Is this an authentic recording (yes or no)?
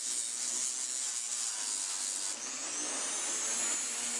yes